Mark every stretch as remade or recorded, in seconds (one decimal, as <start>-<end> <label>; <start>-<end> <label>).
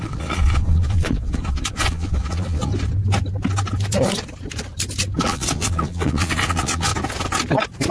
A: 0.0-2.7 remade; 2.7-5.2 recorded; 5.2-6.9 remade; 6.9-7.9 recorded